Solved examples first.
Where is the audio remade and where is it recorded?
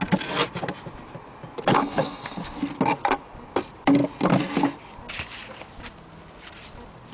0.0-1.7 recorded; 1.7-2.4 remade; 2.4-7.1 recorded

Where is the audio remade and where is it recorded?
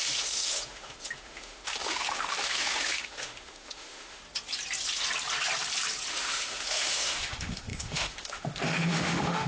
0.0-4.2 remade; 4.2-6.1 recorded; 6.1-9.5 remade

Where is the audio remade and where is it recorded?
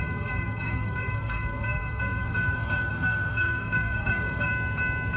0.0-4.5 remade; 4.5-5.2 recorded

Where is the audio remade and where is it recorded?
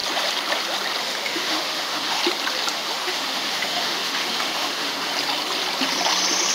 0.0-1.0 recorded; 1.0-2.2 remade; 2.2-2.7 recorded; 2.7-5.1 remade; 5.1-6.5 recorded